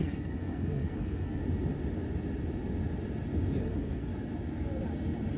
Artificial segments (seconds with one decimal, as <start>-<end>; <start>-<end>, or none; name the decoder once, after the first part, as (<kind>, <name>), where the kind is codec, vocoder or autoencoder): 0.0-1.4 (codec, SNAC); 3.6-4.1